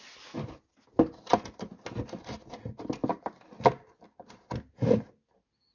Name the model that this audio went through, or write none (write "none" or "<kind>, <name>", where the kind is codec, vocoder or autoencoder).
none